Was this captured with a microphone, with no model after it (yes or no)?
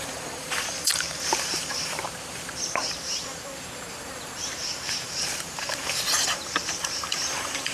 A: no